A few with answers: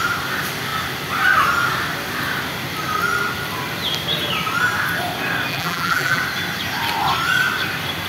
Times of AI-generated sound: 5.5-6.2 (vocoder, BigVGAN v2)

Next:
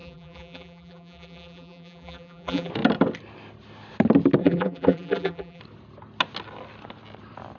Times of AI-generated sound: 0.0-2.7 (vocoder, BigVGAN v2); 4.4-5.6

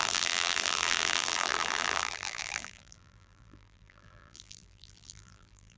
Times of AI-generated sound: 0.0-5.8 (vocoder, BigVGAN v2)